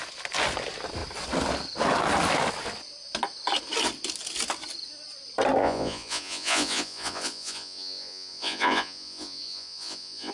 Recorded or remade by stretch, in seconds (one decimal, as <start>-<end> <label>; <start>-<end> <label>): 0.0-5.6 recorded; 5.6-10.3 remade